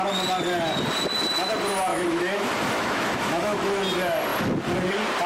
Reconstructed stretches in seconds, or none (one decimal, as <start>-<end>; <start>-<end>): 1.9-3.7